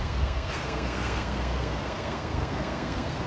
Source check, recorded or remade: remade